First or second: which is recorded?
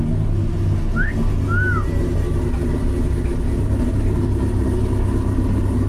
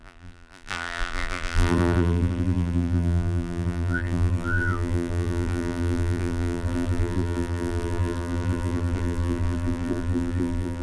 first